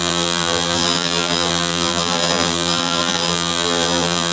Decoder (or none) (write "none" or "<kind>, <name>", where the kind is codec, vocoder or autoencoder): vocoder, BigVGAN v2